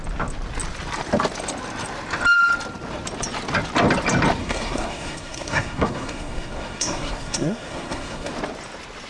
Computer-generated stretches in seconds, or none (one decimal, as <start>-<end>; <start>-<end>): 4.4-8.3